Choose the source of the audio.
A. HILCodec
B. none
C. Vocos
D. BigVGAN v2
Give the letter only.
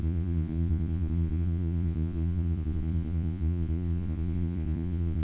C